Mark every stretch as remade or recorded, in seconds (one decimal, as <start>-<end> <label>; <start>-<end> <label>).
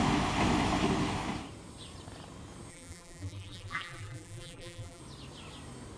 0.0-2.7 recorded; 2.7-5.0 remade; 5.0-6.0 recorded